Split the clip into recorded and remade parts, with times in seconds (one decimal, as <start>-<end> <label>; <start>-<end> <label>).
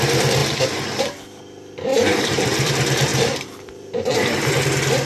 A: 0.0-1.9 recorded; 1.9-2.7 remade; 2.7-3.1 recorded; 3.1-4.5 remade; 4.5-5.0 recorded